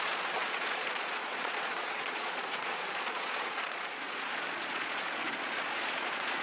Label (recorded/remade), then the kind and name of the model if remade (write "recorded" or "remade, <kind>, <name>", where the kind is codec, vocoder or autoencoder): remade, vocoder, Vocos